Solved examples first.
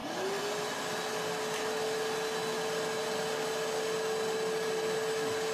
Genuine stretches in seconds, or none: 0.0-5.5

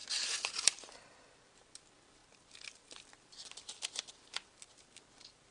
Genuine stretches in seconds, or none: 1.2-2.2

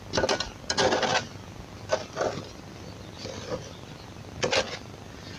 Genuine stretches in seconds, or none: 0.0-5.4

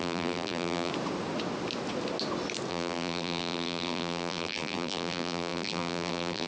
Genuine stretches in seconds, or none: 0.9-2.7

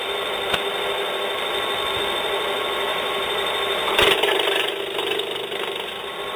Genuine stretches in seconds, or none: 0.0-2.9; 4.8-6.4